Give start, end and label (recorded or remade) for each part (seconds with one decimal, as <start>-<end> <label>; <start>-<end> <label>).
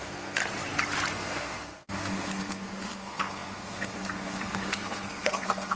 0.0-0.4 remade; 0.4-1.1 recorded; 1.1-5.8 remade